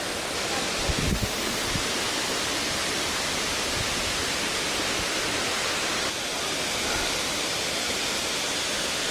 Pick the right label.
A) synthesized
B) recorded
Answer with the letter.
B